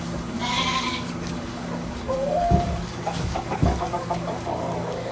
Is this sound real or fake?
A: fake